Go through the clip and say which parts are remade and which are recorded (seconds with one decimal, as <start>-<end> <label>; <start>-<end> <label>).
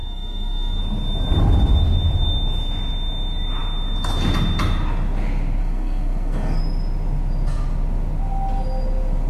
0.0-0.8 remade; 0.8-5.6 recorded; 5.6-6.6 remade; 6.6-9.3 recorded